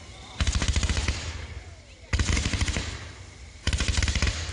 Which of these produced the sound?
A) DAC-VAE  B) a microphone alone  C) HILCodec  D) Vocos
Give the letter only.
B